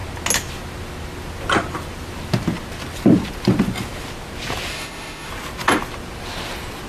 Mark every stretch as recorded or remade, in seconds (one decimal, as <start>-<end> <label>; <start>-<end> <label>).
0.0-4.7 recorded; 4.7-5.3 remade; 5.3-6.9 recorded